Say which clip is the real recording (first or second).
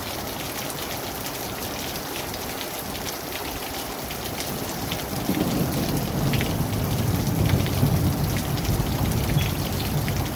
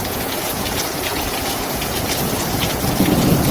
first